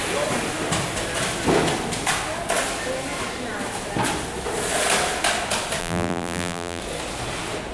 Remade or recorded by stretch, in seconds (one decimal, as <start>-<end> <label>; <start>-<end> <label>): 0.0-5.8 recorded; 5.8-6.8 remade; 6.8-7.7 recorded